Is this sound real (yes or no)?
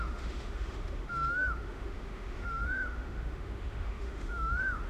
no